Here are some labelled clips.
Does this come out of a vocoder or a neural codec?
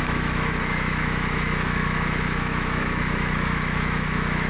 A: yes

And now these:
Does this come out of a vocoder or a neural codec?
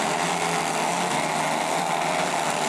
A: no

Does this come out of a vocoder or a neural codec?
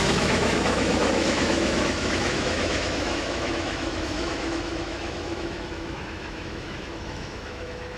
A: yes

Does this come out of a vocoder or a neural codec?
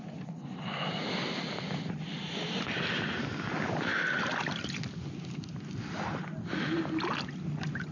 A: no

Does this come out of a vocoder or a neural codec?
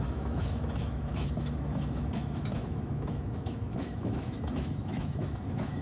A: yes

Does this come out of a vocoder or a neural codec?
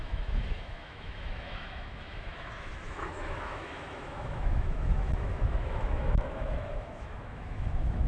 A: yes